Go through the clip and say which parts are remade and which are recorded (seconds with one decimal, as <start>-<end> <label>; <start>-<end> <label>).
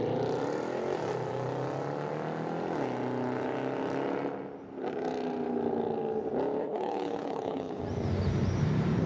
0.0-6.6 recorded; 6.6-7.8 remade; 7.8-9.1 recorded